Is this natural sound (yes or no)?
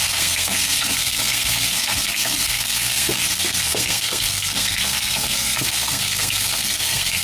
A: no